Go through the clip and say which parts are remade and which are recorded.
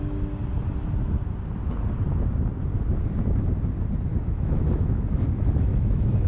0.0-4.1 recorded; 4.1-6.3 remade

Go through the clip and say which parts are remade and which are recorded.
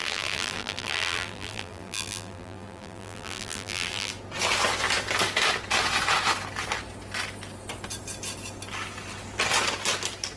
0.0-4.1 remade; 4.1-10.4 recorded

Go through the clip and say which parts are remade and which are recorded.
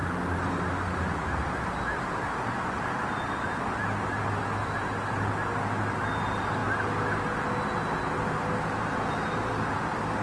0.0-10.2 recorded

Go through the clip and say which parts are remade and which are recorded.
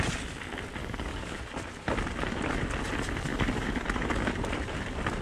0.0-0.8 recorded; 0.8-1.4 remade; 1.4-3.3 recorded; 3.3-4.3 remade; 4.3-5.2 recorded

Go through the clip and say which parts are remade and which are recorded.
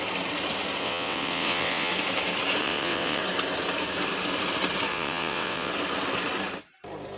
0.0-0.8 recorded; 0.8-1.9 remade; 1.9-2.6 recorded; 2.6-3.2 remade; 3.2-4.9 recorded; 4.9-5.7 remade; 5.7-7.2 recorded